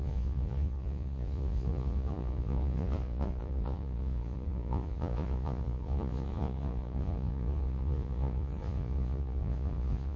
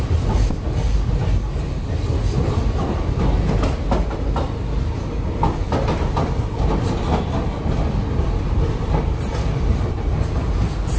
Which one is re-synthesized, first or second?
first